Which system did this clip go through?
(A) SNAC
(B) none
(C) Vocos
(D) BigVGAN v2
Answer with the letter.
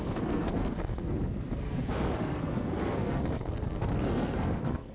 A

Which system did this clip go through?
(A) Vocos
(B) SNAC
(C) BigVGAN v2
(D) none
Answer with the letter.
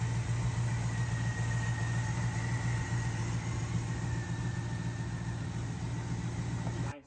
D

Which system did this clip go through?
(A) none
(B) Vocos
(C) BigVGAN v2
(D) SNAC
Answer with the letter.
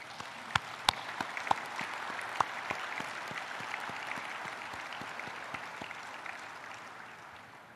A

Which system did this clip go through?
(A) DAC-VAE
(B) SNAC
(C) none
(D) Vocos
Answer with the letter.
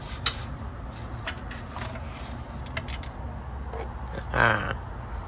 C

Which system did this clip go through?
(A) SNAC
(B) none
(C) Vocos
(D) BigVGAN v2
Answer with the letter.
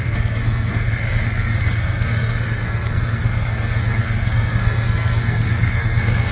A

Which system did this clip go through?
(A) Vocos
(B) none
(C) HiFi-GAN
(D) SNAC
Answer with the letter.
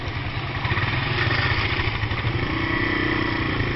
B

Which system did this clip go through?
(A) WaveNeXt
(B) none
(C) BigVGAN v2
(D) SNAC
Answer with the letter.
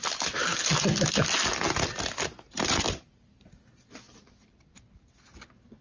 B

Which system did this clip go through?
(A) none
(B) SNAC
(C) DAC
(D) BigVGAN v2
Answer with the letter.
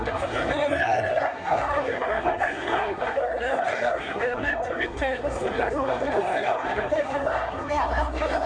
B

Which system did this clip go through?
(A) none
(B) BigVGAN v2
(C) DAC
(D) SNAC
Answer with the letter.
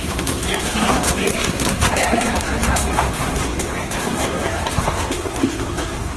D